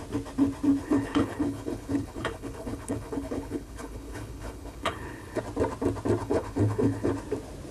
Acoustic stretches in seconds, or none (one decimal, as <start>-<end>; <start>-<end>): 0.0-0.8; 5.4-6.2; 7.1-7.7